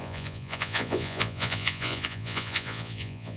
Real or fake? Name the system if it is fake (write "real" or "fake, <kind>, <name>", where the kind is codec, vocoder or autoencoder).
fake, vocoder, Vocos